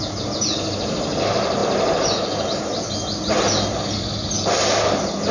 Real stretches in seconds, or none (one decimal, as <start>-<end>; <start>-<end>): 0.0-5.3